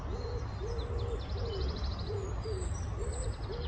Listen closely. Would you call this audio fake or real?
real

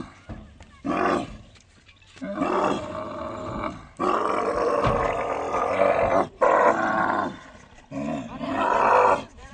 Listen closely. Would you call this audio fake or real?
real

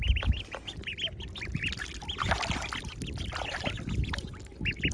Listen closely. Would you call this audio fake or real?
real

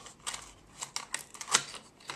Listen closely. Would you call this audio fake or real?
real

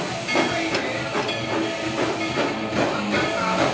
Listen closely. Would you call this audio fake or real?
real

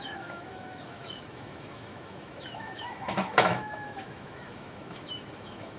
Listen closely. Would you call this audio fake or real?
fake